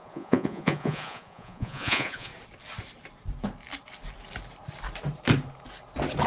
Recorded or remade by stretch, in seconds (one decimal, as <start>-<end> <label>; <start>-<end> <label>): 0.0-2.3 remade; 2.3-6.3 recorded